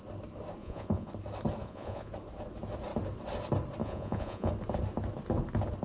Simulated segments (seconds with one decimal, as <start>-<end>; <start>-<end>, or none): 0.6-1.1; 1.6-2.1; 3.8-4.5